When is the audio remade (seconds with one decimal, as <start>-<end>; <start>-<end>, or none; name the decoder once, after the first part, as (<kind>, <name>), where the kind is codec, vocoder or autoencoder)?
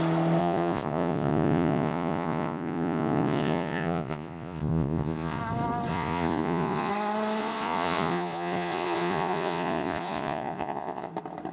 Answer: 0.4-5.4 (vocoder, Vocos); 5.9-6.9; 7.4-11.1